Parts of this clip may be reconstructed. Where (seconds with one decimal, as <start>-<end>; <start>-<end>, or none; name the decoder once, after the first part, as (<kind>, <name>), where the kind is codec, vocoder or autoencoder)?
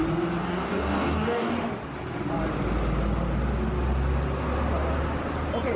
0.4-1.5 (codec, DAC)